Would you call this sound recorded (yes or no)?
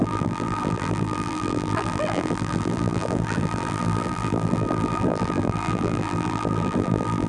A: no